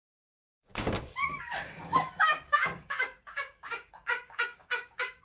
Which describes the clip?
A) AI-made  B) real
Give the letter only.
A